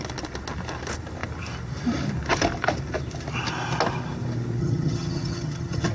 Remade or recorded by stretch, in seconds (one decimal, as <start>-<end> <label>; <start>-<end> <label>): 0.0-4.6 recorded; 4.6-5.9 remade